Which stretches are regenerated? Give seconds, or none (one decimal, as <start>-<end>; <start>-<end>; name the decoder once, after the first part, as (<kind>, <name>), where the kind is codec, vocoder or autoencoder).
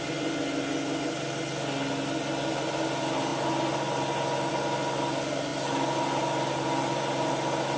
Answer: none